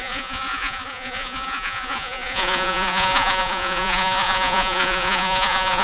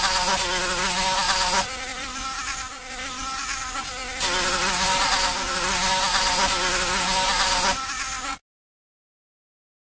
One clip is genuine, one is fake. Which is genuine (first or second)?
second